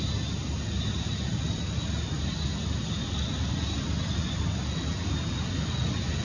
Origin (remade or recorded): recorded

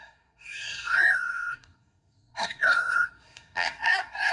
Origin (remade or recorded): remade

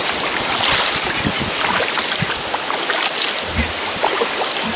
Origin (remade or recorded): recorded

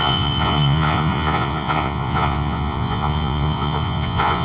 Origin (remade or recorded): remade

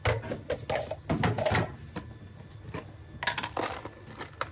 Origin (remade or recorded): recorded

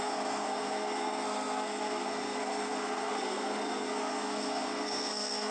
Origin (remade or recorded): remade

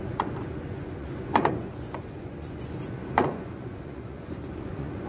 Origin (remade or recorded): remade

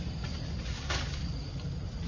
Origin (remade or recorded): recorded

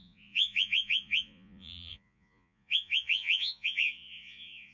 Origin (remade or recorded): remade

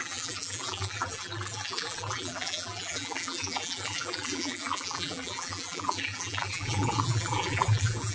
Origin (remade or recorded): remade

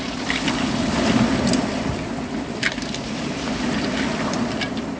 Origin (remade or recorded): recorded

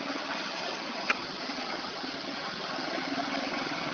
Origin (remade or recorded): remade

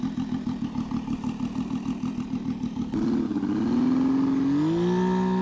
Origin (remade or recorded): recorded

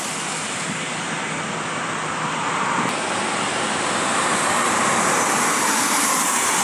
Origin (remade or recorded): recorded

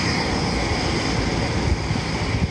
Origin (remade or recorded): recorded